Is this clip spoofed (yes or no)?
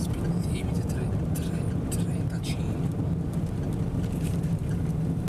no